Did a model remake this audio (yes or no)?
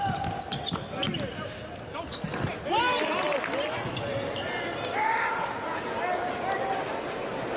no